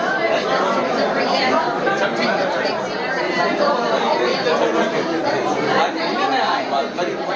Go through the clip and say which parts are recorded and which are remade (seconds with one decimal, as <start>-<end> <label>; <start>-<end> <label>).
0.0-0.9 recorded; 0.9-5.3 remade; 5.3-7.4 recorded